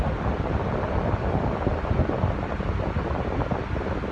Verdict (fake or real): real